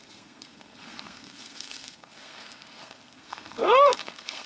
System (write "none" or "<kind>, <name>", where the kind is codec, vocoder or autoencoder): codec, SNAC